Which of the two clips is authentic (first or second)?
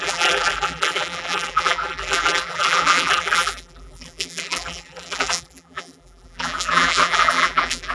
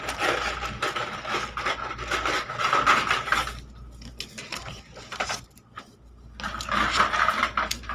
second